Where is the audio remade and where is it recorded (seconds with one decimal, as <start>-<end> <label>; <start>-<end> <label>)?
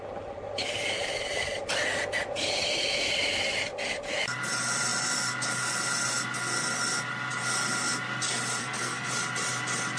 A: 0.0-8.6 recorded; 8.6-9.1 remade; 9.1-10.0 recorded